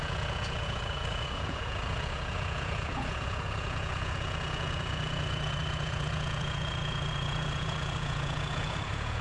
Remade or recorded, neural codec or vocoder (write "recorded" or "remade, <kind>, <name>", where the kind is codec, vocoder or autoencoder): remade, vocoder, Vocos